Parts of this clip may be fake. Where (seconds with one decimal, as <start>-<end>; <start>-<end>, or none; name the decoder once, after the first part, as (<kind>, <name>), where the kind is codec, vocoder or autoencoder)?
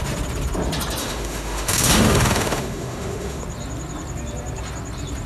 1.0-3.4 (autoencoder, DAC-VAE)